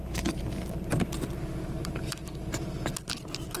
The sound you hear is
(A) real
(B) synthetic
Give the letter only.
A